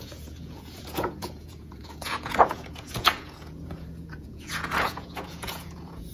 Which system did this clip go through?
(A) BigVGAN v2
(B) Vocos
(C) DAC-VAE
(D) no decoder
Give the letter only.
B